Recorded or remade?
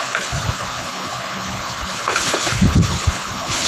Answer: remade